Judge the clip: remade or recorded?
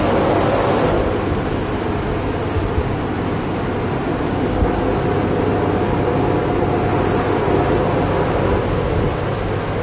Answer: recorded